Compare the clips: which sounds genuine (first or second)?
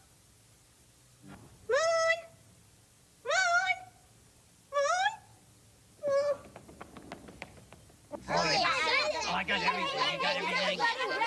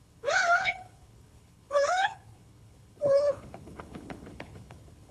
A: first